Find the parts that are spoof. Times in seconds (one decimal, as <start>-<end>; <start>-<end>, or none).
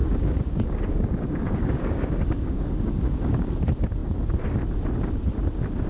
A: 0.0-3.5